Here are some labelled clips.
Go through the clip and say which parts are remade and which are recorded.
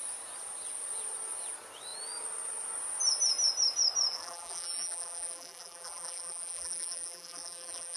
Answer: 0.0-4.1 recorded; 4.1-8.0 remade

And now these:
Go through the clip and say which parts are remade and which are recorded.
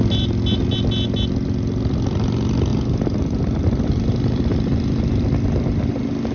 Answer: 0.0-2.7 recorded; 2.7-5.2 remade; 5.2-6.3 recorded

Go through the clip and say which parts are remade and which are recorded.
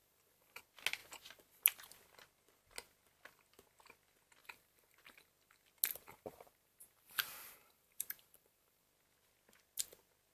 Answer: 0.0-0.6 remade; 0.6-4.4 recorded; 4.4-5.3 remade; 5.3-5.9 recorded; 5.9-8.8 remade; 8.8-10.3 recorded